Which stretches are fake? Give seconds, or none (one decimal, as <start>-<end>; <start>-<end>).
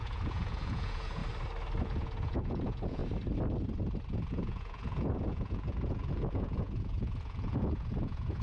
0.0-1.2; 1.8-3.0; 4.3-8.4